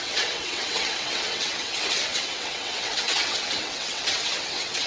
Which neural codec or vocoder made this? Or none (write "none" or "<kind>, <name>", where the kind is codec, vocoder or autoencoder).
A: vocoder, WaveNeXt